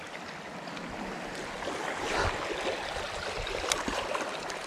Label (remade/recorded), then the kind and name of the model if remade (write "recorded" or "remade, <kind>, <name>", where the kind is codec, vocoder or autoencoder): recorded